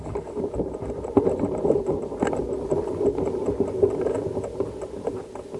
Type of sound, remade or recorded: recorded